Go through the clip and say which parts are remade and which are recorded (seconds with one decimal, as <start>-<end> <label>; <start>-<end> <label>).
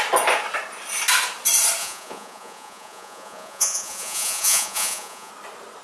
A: 0.0-1.8 recorded; 1.8-5.3 remade; 5.3-5.8 recorded